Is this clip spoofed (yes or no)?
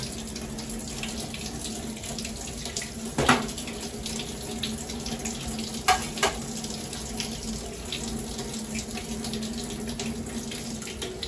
no